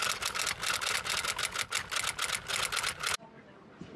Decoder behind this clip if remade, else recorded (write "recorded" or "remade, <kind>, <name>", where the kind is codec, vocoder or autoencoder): recorded